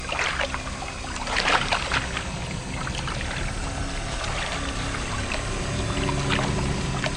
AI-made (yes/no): no